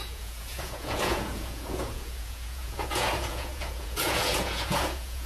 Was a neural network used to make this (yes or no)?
yes